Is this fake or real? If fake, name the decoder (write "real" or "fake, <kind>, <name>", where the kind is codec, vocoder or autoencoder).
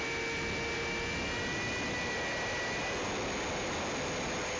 real